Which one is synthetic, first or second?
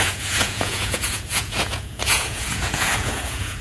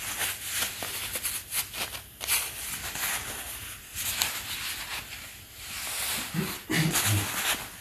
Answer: first